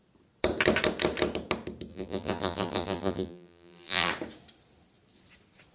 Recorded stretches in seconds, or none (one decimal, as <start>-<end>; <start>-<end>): 0.0-1.9; 4.1-5.7